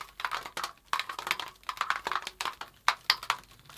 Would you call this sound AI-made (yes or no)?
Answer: no